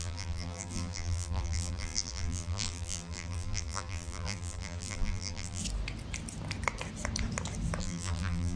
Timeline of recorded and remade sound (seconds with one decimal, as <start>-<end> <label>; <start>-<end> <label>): 0.0-5.6 remade; 5.6-7.8 recorded; 7.8-8.6 remade

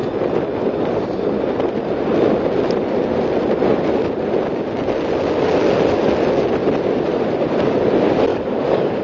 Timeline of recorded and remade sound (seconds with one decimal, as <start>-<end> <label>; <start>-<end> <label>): 0.0-8.3 recorded; 8.3-9.0 remade

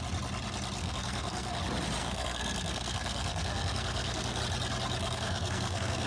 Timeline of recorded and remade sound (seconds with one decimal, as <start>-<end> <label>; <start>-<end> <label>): 0.0-0.8 recorded; 0.8-1.6 remade; 1.6-2.0 recorded; 2.0-4.4 remade; 4.4-5.0 recorded; 5.0-6.1 remade